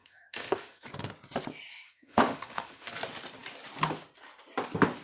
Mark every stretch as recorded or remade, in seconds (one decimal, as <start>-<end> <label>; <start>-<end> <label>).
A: 0.0-0.9 remade; 0.9-1.7 recorded; 1.7-2.9 remade; 2.9-5.0 recorded